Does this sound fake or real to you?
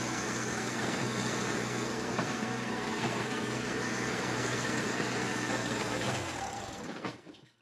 fake